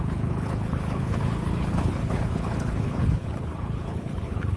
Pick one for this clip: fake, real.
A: fake